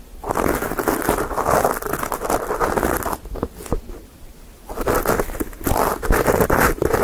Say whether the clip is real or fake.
real